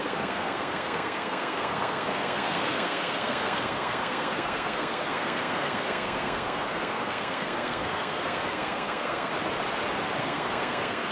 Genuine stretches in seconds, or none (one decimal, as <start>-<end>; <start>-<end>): 9.3-10.2